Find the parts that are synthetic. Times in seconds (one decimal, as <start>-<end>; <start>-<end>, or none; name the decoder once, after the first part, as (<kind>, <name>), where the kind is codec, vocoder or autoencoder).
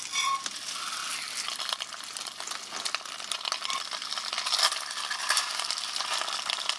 5.2-6.1 (vocoder, BigVGAN v2)